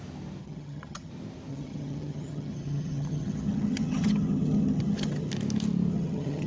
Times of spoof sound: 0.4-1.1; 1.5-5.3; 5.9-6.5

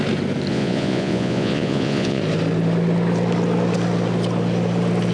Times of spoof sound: 0.5-2.2

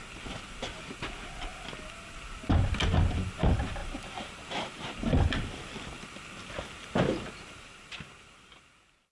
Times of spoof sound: 3.8-5.0; 7.1-7.9

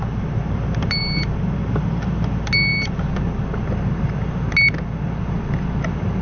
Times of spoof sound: none